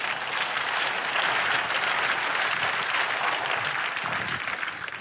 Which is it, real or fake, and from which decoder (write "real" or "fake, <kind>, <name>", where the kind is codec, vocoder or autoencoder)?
fake, vocoder, BigVGAN v2